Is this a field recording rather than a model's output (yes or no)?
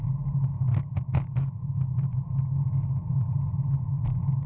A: yes